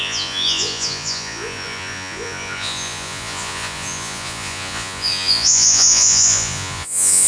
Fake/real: fake